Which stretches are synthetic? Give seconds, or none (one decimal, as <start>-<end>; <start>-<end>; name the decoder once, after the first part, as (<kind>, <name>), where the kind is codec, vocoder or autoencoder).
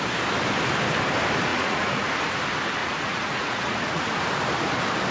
1.5-2.1 (vocoder, Vocos); 2.8-4.1